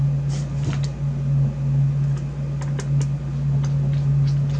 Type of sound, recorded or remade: recorded